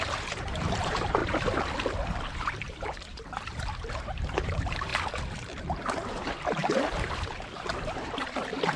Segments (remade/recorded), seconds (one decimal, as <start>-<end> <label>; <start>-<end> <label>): 0.0-1.2 remade; 1.2-2.3 recorded; 2.3-4.9 remade; 4.9-5.6 recorded; 5.6-8.8 remade